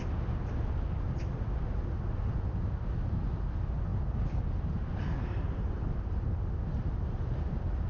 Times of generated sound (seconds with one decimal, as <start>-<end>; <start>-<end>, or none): none